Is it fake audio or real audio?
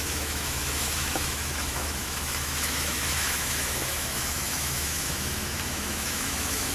fake